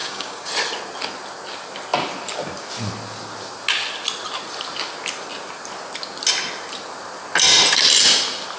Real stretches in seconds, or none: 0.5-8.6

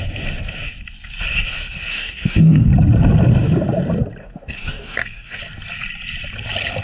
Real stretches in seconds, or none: 0.0-1.9; 2.7-4.2; 5.4-6.8

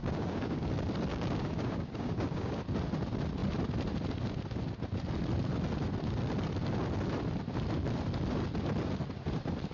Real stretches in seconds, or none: 0.7-1.1; 2.6-9.7

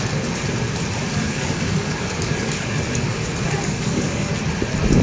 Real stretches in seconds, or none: 0.0-1.3; 4.3-5.0

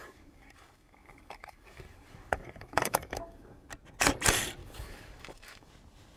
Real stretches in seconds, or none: 3.7-4.6; 5.7-6.2

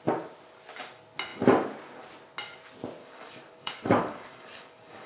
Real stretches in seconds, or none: 0.0-3.0

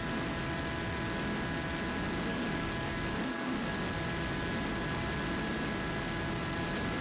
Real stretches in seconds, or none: 0.0-2.3; 3.7-7.0